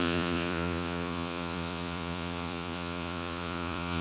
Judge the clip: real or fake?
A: fake